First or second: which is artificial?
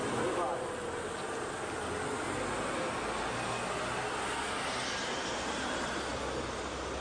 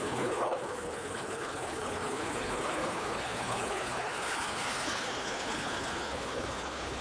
second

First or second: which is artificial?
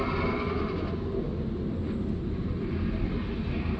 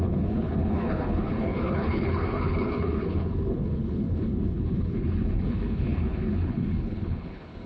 second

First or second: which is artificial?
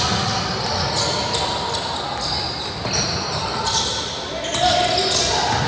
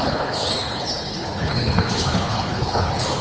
second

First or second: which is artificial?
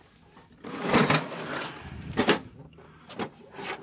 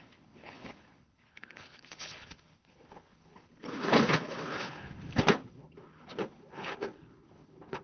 second